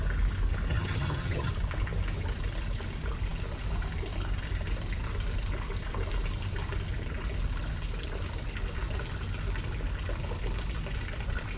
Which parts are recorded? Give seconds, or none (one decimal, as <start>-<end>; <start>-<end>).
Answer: 0.0-0.7; 1.5-11.6